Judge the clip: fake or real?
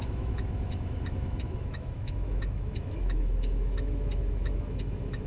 fake